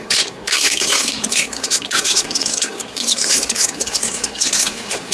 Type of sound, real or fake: fake